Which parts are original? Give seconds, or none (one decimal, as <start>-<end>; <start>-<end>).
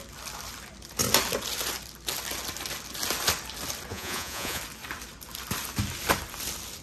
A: 0.0-3.9; 4.6-6.8